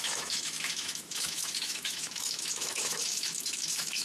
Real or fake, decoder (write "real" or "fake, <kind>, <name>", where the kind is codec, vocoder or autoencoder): fake, autoencoder, DAC-VAE